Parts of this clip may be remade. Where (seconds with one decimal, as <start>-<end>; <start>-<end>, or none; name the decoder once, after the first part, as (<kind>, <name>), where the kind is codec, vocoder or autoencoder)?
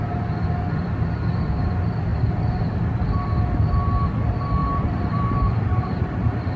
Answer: 4.6-6.6 (vocoder, BigVGAN v2)